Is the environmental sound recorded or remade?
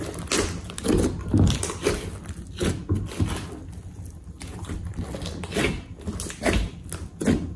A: recorded